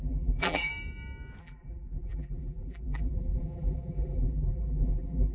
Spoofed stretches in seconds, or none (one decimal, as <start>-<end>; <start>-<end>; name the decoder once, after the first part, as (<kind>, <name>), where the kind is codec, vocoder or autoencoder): 0.0-0.7 (vocoder, BigVGAN v2); 1.4-5.3